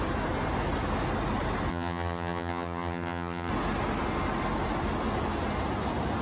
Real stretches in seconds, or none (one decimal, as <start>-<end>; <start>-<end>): 0.0-1.7; 3.5-6.2

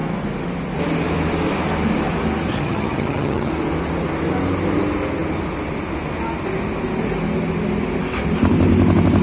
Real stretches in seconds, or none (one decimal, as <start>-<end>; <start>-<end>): 0.0-2.5; 3.5-9.2

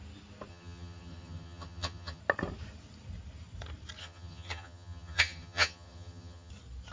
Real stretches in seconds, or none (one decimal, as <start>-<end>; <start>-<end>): 0.0-0.5; 2.2-4.0; 6.5-6.9

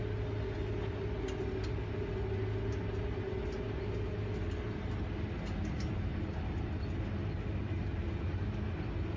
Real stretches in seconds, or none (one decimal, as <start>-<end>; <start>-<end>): 0.0-9.2